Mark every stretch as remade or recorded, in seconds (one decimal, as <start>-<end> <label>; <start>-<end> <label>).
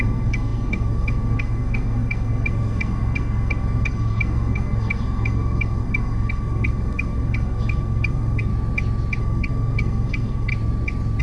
0.0-8.5 remade; 8.5-9.2 recorded; 9.2-10.5 remade; 10.5-11.2 recorded